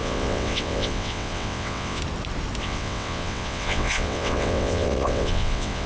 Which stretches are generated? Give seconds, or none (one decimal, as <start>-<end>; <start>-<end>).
0.0-2.0; 2.6-5.9